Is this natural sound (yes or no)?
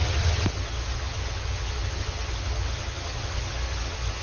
no